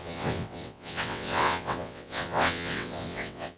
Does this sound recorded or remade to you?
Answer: remade